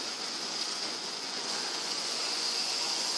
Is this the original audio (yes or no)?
no